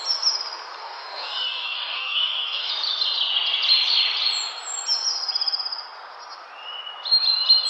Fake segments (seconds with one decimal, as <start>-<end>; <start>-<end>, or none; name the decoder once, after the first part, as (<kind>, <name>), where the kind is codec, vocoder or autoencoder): 0.8-2.7 (codec, DAC)